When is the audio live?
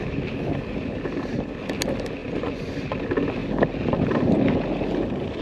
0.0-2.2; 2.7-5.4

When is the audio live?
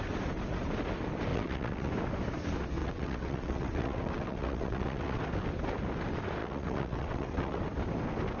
0.0-1.3; 1.9-2.8; 5.2-6.4; 7.6-8.4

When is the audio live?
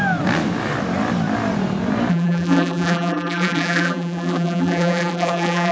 0.0-2.1